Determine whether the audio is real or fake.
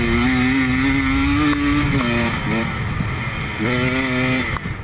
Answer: real